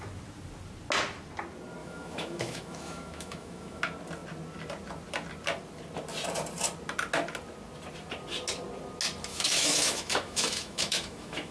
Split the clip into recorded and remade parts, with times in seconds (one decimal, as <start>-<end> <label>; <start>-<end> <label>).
0.0-1.8 recorded; 1.8-3.8 remade; 3.8-9.3 recorded; 9.3-11.5 remade